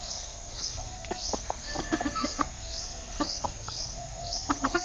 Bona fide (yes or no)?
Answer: no